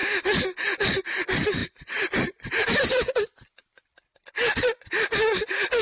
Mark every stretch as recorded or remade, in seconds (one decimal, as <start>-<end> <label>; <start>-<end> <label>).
0.0-1.6 recorded; 1.6-4.2 remade; 4.2-5.8 recorded